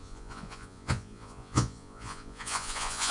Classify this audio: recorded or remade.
remade